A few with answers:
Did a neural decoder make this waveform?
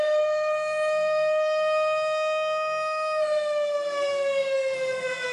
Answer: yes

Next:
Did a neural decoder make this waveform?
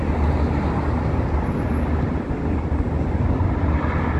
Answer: no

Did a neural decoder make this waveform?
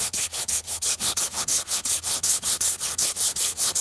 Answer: yes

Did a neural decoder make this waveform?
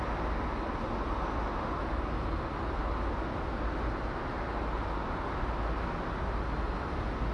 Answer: no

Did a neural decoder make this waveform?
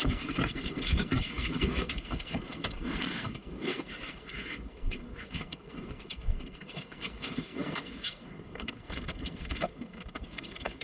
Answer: yes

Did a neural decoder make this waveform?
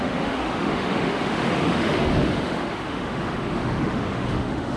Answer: yes